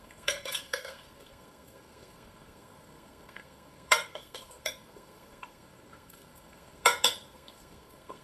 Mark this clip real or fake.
fake